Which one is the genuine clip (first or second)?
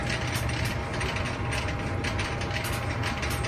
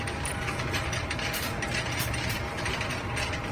first